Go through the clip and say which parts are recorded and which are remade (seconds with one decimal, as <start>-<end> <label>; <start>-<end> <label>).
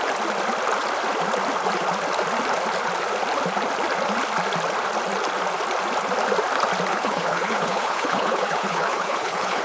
0.0-6.9 recorded; 6.9-9.6 remade